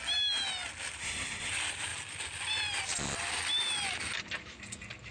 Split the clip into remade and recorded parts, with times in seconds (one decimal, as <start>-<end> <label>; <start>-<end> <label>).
0.0-1.0 recorded; 1.0-1.5 remade; 1.5-5.1 recorded